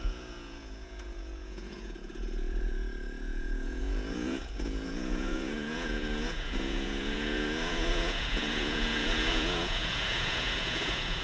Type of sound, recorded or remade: remade